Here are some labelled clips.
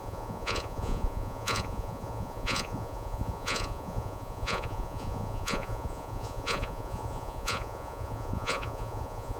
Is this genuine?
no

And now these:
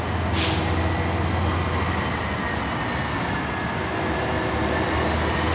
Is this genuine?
yes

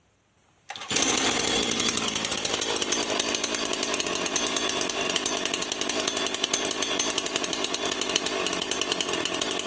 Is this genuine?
yes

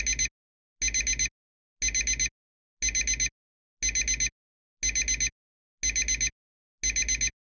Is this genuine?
yes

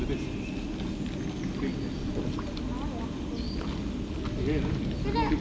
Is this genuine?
yes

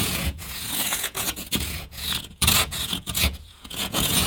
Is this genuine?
no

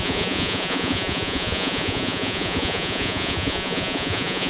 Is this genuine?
no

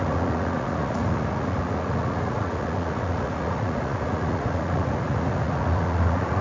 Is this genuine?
no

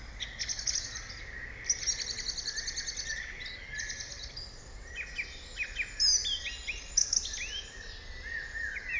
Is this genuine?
yes